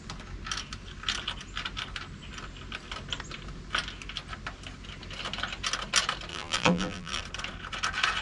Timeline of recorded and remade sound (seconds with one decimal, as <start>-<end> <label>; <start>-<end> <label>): 0.0-6.3 recorded; 6.3-7.2 remade; 7.2-8.2 recorded